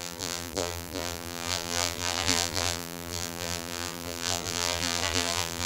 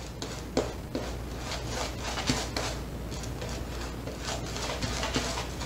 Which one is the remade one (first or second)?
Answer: first